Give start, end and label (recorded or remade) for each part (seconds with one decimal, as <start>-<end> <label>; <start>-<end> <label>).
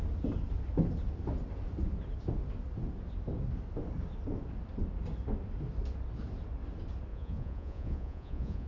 0.0-7.1 recorded; 7.1-8.7 remade